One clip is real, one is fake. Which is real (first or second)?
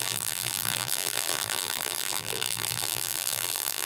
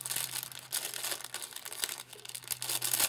second